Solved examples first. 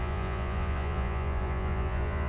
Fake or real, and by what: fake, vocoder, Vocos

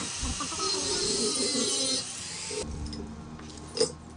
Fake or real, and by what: real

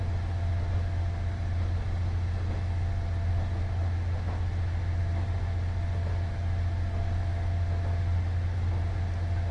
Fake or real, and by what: real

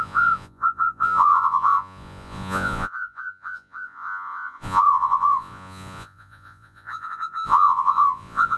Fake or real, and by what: fake, vocoder, Vocos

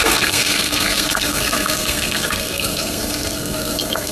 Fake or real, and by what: fake, codec, SNAC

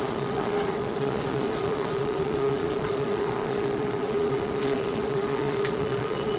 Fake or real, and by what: fake, vocoder, Vocos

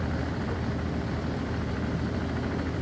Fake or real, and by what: fake, vocoder, BigVGAN v2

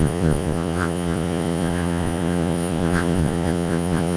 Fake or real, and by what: fake, vocoder, Vocos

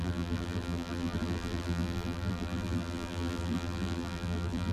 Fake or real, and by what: fake, vocoder, BigVGAN v2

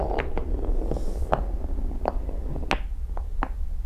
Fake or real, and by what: real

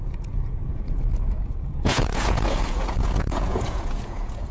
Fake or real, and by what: fake, vocoder, Vocos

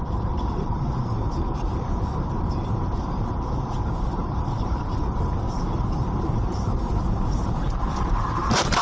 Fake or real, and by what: fake, vocoder, BigVGAN v2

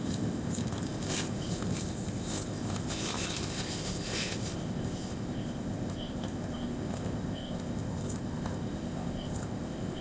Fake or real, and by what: fake, codec, ZipCodec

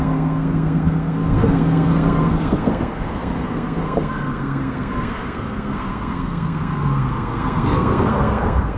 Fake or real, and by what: fake, codec, SNAC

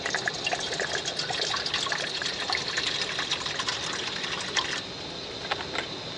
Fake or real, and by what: real